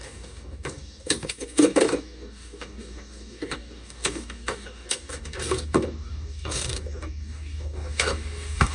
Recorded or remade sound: remade